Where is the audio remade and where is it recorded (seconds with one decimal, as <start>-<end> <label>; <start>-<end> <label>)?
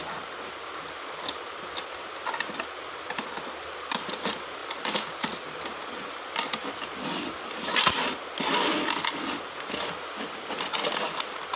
0.0-11.6 recorded